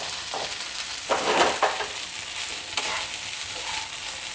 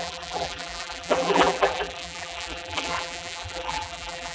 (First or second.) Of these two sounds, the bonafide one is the first